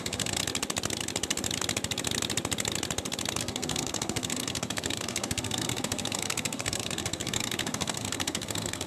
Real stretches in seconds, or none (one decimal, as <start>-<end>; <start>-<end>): 0.4-3.4

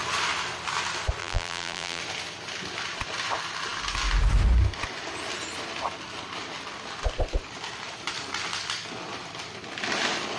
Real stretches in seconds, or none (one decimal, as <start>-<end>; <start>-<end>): 0.0-1.2; 2.0-10.4

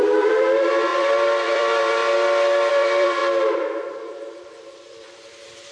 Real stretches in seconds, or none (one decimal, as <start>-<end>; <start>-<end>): 2.0-2.7; 3.2-3.9

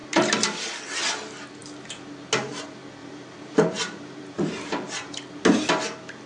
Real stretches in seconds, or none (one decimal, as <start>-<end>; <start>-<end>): 0.8-3.0; 5.1-6.3

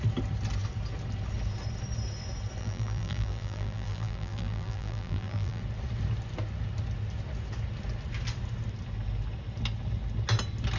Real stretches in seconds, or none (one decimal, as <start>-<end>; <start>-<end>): 0.0-2.6; 5.6-10.8

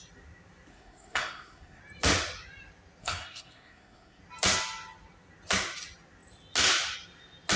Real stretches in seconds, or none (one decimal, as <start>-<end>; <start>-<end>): 0.0-0.7; 1.8-3.0; 4.2-7.6

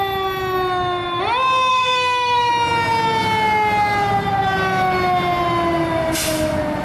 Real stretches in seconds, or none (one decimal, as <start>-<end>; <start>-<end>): 0.0-1.7; 2.5-6.8